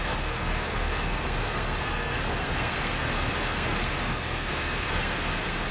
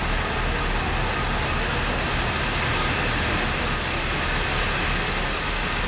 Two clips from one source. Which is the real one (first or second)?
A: second